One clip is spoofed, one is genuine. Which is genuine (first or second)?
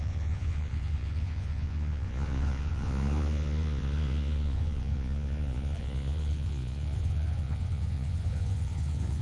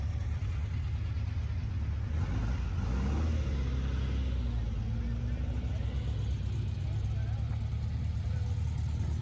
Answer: second